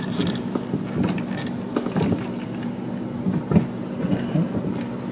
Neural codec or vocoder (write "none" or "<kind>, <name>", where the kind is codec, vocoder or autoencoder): none